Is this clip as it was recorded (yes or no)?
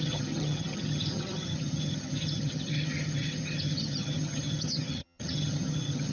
no